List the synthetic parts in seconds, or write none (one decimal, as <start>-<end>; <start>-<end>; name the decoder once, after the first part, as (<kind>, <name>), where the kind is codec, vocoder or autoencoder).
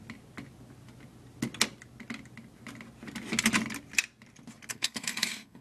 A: 4.7-5.6 (codec, SNAC)